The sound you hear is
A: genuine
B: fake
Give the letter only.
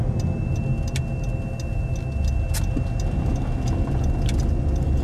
A